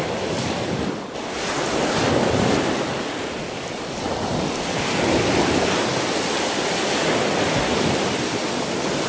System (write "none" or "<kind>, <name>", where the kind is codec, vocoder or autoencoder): none